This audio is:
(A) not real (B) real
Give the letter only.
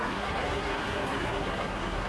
A